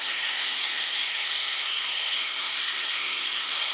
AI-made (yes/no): yes